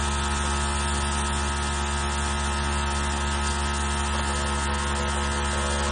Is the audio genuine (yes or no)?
yes